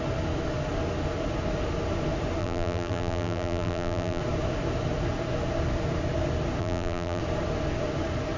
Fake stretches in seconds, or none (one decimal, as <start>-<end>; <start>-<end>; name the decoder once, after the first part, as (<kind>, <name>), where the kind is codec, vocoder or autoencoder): 2.4-4.2 (vocoder, BigVGAN v2); 6.6-7.2